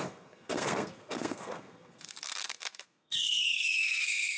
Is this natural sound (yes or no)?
no